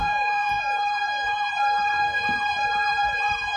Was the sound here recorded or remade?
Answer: remade